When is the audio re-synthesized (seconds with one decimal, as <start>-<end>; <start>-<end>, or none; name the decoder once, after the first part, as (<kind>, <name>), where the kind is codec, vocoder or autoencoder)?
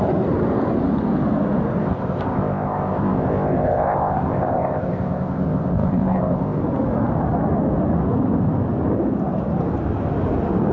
1.8-6.6 (codec, ZipCodec)